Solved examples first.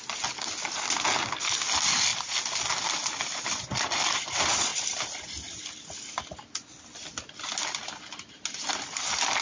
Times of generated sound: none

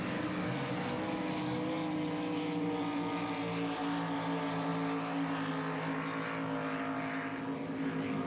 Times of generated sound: none